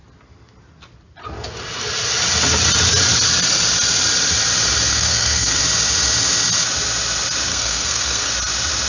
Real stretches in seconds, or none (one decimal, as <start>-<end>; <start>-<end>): 0.0-4.9; 5.6-7.5; 8.3-8.9